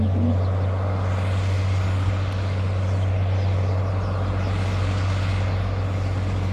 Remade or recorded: recorded